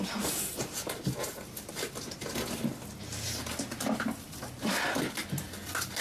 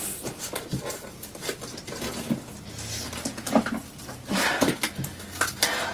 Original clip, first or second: second